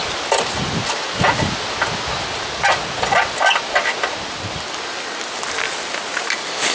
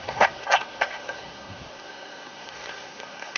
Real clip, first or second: first